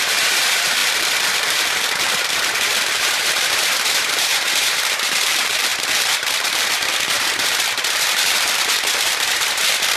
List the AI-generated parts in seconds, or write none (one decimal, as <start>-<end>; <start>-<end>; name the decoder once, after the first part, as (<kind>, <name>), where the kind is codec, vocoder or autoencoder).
0.0-10.0 (vocoder, BigVGAN v2)